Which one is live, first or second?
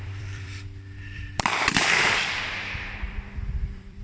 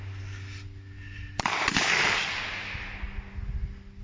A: second